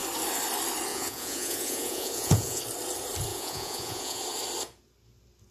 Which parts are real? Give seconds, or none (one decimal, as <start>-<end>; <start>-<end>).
0.0-0.9; 2.6-3.3; 4.2-5.5